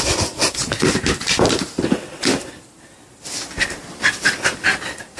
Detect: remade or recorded recorded